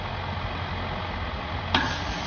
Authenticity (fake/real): real